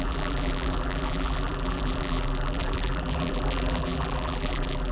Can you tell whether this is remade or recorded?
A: remade